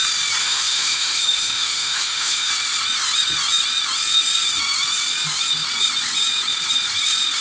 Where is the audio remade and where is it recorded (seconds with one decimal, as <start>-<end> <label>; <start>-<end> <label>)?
0.0-0.4 recorded; 0.4-2.5 remade; 2.5-7.4 recorded